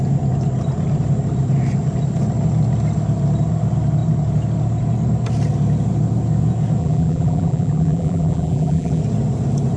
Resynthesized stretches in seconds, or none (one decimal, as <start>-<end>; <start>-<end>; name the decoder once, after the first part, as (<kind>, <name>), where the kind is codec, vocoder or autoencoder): 6.8-9.0 (vocoder, BigVGAN v2)